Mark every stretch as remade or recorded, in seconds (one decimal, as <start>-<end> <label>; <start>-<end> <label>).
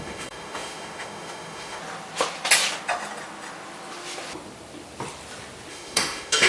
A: 0.0-1.8 remade; 1.8-5.7 recorded; 5.7-6.5 remade